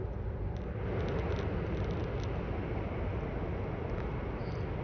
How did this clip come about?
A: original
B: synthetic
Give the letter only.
A